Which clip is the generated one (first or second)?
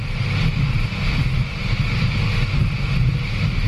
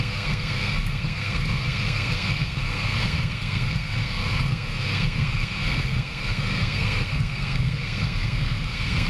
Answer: second